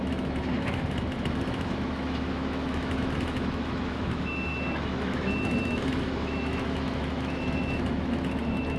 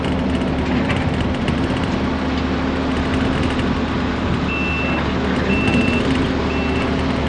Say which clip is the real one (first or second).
second